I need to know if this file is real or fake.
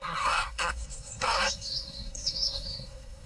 fake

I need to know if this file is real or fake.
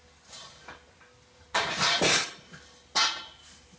real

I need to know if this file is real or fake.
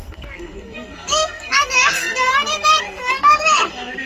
fake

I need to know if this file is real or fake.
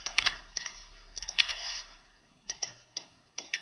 fake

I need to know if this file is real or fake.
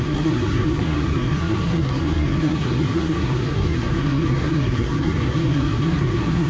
fake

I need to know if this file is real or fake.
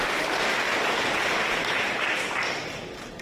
real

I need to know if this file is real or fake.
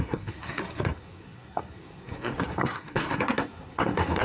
fake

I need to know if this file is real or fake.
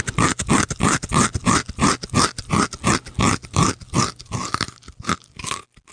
real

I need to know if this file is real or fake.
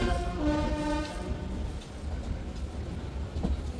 real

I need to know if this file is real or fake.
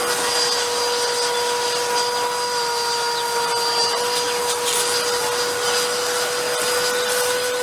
real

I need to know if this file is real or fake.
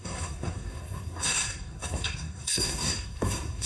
fake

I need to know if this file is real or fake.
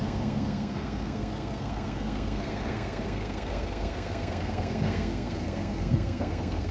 fake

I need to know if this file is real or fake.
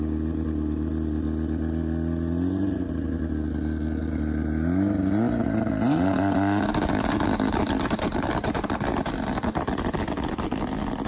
real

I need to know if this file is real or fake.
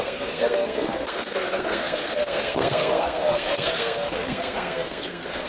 fake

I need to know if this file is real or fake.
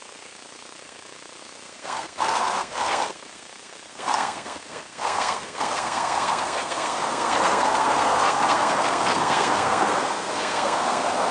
fake